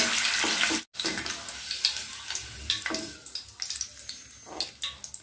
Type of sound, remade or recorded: recorded